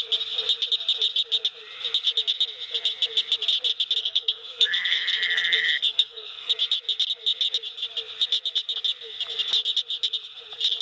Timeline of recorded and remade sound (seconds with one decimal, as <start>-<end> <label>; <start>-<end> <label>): 0.0-4.0 recorded; 4.0-6.5 remade; 6.5-10.8 recorded